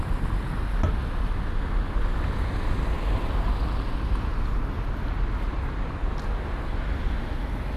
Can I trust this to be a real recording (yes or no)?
yes